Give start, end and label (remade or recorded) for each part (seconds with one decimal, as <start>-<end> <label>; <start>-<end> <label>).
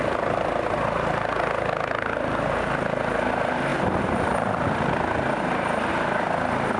0.0-6.8 recorded